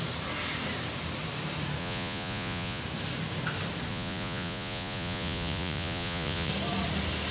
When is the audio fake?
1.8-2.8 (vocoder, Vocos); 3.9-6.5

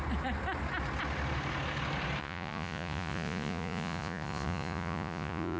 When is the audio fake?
2.2-5.6 (vocoder, Vocos)